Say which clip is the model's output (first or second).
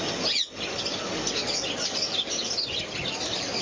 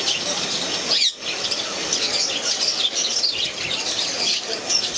second